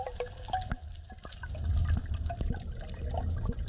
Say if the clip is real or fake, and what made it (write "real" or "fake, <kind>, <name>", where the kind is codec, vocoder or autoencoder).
real